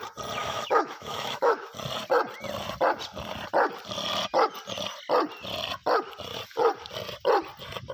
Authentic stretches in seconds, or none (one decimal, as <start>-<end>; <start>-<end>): 0.0-0.4; 1.7-7.9